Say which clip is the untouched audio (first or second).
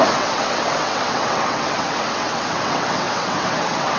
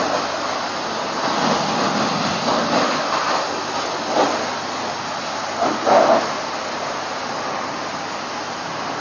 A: second